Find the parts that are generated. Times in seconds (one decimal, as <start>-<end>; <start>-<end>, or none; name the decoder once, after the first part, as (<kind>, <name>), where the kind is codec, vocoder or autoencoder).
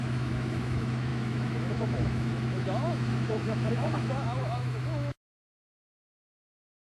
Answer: 0.0-6.9 (autoencoder, DAC-VAE)